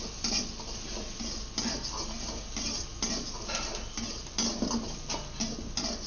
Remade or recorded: recorded